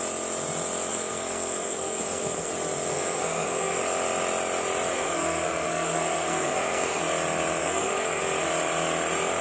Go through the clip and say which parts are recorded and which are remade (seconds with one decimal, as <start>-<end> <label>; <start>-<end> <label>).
0.0-0.9 recorded; 0.9-2.5 remade; 2.5-2.9 recorded; 2.9-3.8 remade; 3.8-4.9 recorded; 4.9-7.0 remade; 7.0-7.6 recorded; 7.6-8.2 remade; 8.2-9.4 recorded